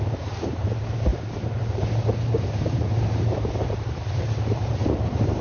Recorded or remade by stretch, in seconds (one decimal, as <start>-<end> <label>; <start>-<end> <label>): 0.0-5.4 remade